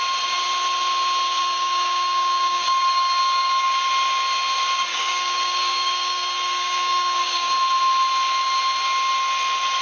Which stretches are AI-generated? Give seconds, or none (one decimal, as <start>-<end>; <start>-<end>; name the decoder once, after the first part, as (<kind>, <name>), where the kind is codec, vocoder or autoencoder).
1.4-3.9 (codec, DAC); 4.9-7.5